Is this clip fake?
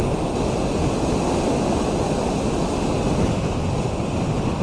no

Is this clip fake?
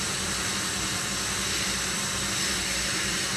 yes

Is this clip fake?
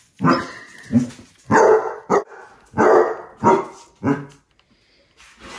no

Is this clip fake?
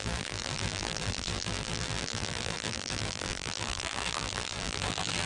yes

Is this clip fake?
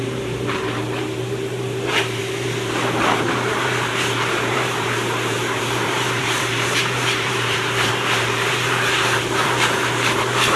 yes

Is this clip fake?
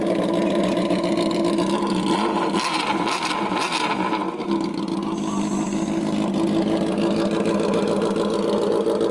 no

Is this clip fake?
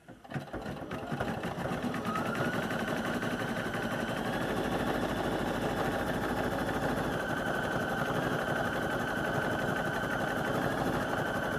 no